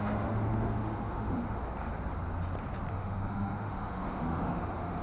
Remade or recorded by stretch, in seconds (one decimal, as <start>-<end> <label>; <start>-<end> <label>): 0.0-1.6 remade; 1.6-2.9 recorded; 2.9-5.0 remade